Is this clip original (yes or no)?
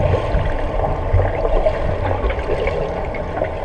yes